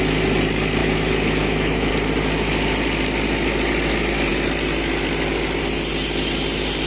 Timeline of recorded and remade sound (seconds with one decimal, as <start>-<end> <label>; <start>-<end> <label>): 0.0-0.8 recorded; 0.8-1.9 remade; 1.9-6.9 recorded